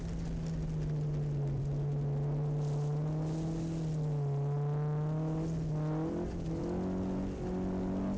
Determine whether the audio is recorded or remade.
recorded